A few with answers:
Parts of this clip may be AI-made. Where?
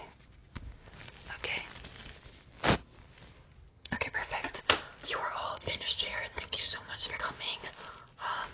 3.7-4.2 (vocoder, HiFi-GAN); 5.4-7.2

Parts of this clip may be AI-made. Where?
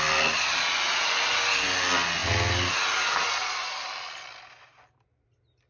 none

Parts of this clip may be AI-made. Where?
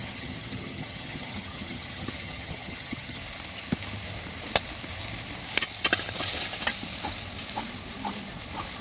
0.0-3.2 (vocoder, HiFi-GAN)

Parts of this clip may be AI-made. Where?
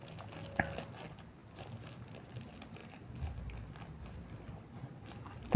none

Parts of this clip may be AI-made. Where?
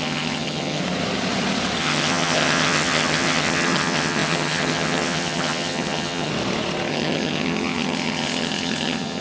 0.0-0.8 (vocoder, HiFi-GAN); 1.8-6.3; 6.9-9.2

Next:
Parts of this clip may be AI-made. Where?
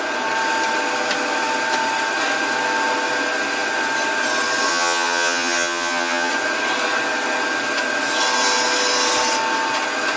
4.7-6.3 (vocoder, HiFi-GAN)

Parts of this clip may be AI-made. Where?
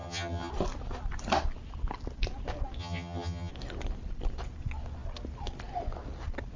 0.0-0.5 (vocoder, HiFi-GAN); 2.8-3.5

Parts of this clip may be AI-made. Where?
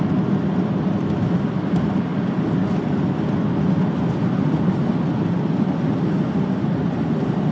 none